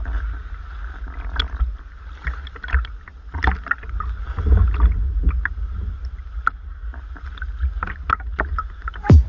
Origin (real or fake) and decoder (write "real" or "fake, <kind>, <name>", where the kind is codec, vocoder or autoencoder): real